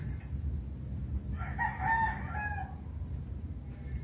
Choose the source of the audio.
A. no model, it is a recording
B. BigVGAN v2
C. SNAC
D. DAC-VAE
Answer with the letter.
A